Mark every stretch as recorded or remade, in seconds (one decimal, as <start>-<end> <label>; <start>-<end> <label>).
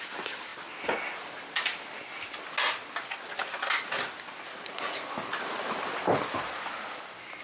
0.0-7.4 recorded